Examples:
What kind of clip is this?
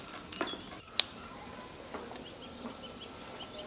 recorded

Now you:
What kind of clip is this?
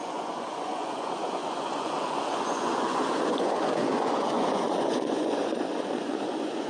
remade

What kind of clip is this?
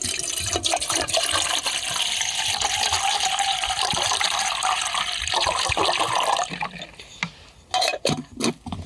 recorded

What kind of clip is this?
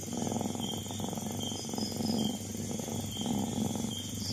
recorded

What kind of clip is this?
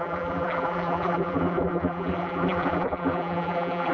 remade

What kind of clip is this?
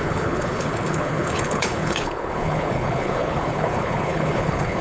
remade